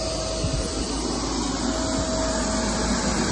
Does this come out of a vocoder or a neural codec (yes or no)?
no